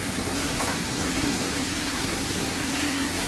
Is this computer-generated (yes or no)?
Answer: yes